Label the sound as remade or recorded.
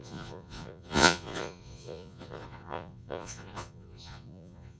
remade